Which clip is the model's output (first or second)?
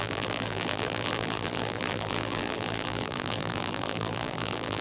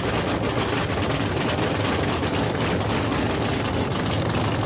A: first